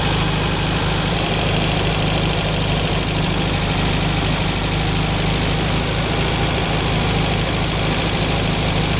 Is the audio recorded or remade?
recorded